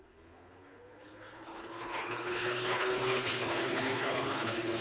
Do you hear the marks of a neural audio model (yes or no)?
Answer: yes